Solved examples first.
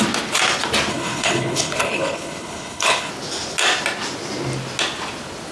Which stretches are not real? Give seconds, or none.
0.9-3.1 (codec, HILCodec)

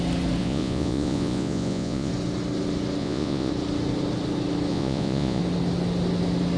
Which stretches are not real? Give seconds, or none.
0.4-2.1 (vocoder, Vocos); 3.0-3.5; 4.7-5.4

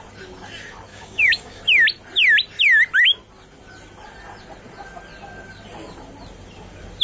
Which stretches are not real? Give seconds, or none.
0.9-1.6 (codec, DAC)